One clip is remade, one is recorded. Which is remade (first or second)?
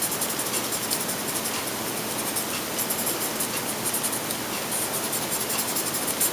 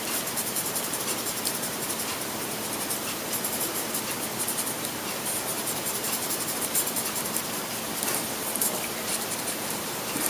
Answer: second